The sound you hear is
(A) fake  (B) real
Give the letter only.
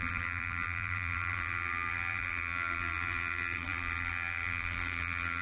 A